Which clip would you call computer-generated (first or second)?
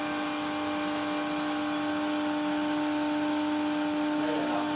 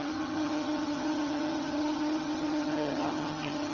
second